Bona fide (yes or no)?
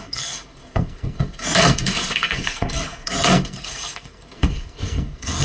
no